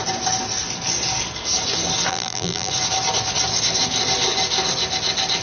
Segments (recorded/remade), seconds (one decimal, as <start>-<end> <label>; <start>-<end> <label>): 0.0-2.1 recorded; 2.1-2.7 remade; 2.7-5.4 recorded